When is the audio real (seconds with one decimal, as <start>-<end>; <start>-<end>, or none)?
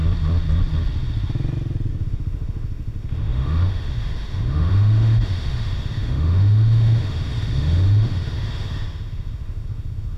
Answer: 0.0-1.9